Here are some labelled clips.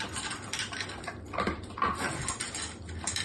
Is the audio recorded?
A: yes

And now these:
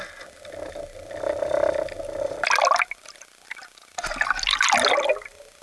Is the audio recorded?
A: yes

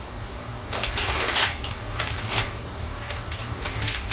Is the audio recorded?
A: no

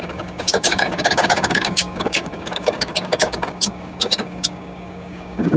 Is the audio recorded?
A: no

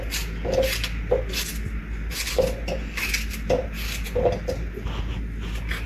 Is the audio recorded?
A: yes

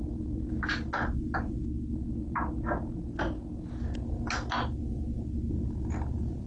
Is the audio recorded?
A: yes